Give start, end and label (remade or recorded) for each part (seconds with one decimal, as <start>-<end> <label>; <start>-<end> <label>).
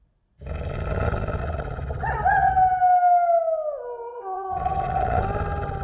0.0-1.4 recorded; 1.4-2.5 remade; 2.5-4.1 recorded; 4.1-5.2 remade; 5.2-5.8 recorded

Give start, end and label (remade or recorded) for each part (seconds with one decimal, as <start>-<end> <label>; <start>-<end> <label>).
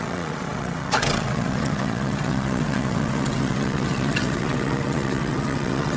0.0-6.0 remade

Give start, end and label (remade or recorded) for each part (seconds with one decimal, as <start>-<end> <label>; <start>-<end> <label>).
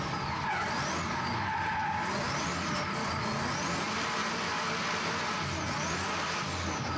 0.0-7.0 recorded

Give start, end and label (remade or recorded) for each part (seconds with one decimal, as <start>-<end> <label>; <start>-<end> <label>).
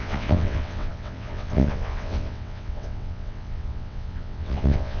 0.0-5.0 remade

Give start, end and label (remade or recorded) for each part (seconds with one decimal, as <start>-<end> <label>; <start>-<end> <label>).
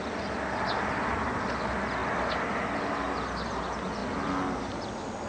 0.0-5.3 recorded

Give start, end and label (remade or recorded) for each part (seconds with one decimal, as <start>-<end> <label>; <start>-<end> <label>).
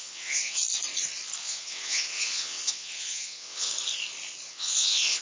0.0-0.6 remade; 0.6-1.4 recorded; 1.4-3.7 remade; 3.7-4.5 recorded; 4.5-5.2 remade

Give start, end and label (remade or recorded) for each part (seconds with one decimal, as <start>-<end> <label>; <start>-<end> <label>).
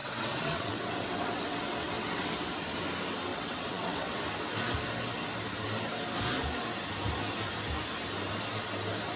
0.0-2.5 remade; 2.5-3.3 recorded; 3.3-4.2 remade; 4.2-9.2 recorded